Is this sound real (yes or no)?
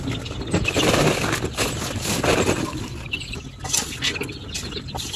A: yes